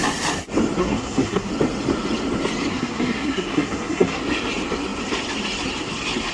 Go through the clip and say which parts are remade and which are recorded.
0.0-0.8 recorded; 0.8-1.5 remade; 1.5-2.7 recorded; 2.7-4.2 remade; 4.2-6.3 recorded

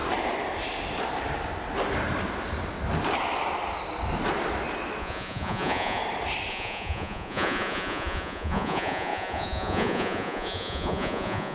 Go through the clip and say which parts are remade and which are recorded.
0.0-5.0 recorded; 5.0-6.0 remade; 6.0-6.5 recorded; 6.5-11.5 remade

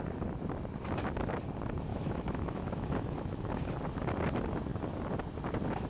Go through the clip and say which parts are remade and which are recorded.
0.0-1.9 recorded; 1.9-3.7 remade; 3.7-5.9 recorded